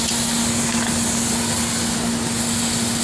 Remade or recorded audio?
recorded